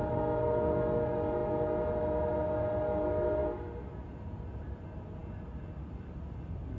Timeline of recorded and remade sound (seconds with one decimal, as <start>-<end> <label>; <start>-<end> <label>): 0.0-6.8 recorded